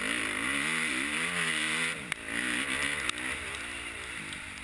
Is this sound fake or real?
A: real